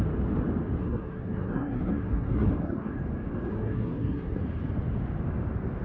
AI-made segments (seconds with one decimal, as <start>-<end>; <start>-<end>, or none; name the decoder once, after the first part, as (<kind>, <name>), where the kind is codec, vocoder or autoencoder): 0.8-2.9 (codec, SNAC); 3.5-4.4